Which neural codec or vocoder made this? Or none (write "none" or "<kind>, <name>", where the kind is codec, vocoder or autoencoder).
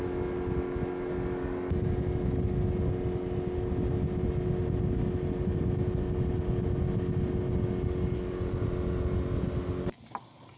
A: none